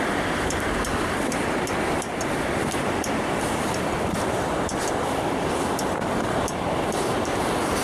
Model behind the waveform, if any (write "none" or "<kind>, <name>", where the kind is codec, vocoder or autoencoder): vocoder, BigVGAN v2